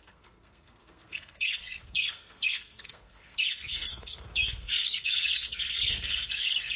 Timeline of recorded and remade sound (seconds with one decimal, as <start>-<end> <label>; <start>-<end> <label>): 0.0-6.8 remade